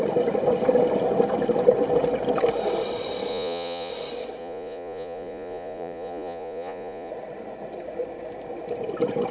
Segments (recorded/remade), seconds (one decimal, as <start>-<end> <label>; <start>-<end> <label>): 0.0-3.3 recorded; 3.3-3.9 remade; 3.9-4.4 recorded; 4.4-7.1 remade; 7.1-9.3 recorded